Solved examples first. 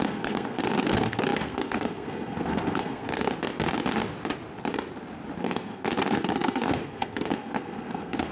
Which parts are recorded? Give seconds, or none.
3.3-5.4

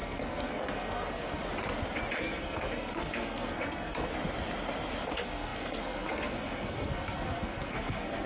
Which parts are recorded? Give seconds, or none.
1.4-2.2; 4.1-5.1

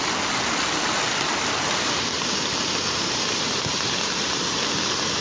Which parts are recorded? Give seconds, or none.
0.0-5.2

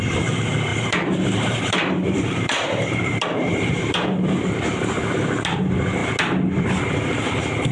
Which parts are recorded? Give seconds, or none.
0.0-0.7; 4.5-7.7

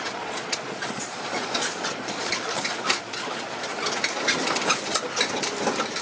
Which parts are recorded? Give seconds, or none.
3.7-6.0

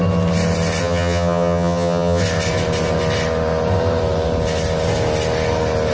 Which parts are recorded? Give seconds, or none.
0.0-0.8; 2.2-5.9

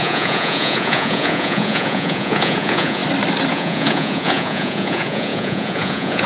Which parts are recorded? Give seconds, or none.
3.0-3.5

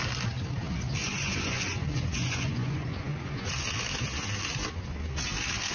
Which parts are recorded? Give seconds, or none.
0.0-1.0; 3.5-5.7